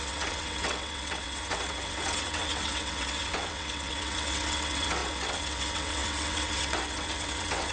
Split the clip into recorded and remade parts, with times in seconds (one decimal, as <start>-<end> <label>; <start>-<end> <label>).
0.0-7.7 remade